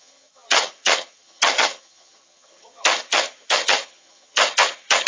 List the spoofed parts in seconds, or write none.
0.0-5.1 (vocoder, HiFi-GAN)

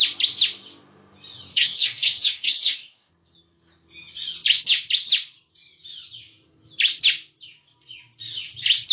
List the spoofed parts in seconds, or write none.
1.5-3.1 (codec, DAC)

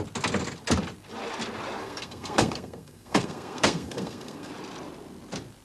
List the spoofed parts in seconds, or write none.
1.8-4.5 (codec, SNAC)

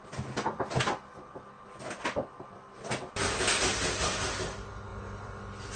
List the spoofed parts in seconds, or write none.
none

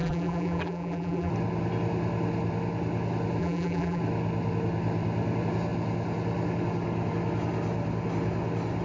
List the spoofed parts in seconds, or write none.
0.0-1.3 (vocoder, BigVGAN v2); 3.4-4.0

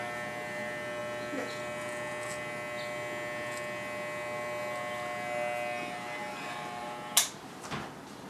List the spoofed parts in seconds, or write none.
none

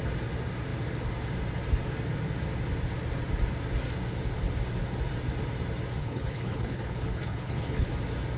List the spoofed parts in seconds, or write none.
6.0-7.9 (codec, HILCodec)